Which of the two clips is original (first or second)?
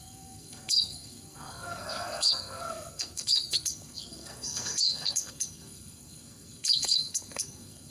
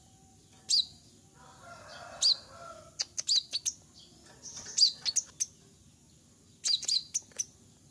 second